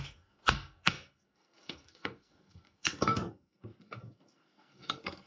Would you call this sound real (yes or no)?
no